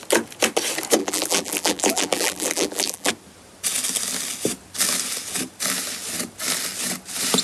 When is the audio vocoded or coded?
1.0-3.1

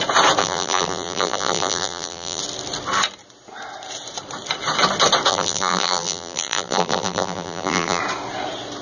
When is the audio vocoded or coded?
0.4-2.4; 5.3-8.0

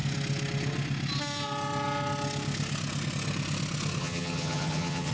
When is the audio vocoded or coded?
4.0-5.1

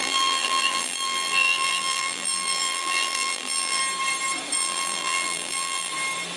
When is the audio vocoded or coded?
0.0-3.8; 4.6-5.9

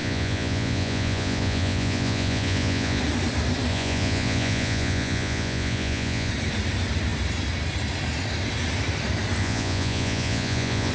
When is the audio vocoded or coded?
0.0-3.0; 3.7-6.3; 9.4-10.9

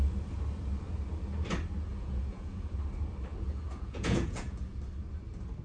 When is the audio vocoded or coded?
1.9-2.7; 3.3-4.8

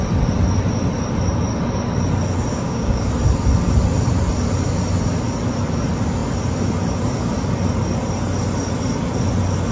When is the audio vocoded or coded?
2.5-3.1